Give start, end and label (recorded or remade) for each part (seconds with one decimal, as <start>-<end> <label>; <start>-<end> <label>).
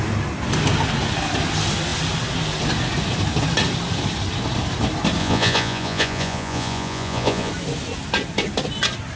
0.0-5.2 recorded; 5.2-7.5 remade; 7.5-9.2 recorded